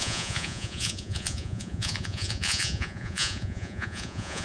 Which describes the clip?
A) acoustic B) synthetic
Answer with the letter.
B